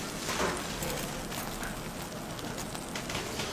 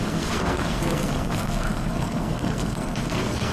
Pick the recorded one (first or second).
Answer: first